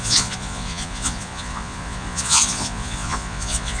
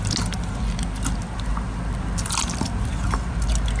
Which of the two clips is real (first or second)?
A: second